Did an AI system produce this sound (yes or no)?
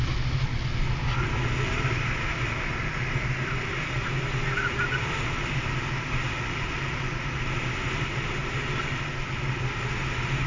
no